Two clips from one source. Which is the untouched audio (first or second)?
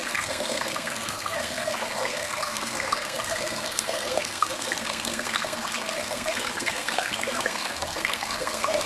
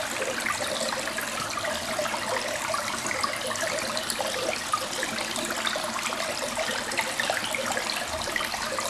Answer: second